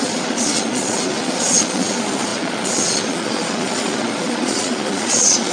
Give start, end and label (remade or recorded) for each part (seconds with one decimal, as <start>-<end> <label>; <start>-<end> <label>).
0.0-5.5 remade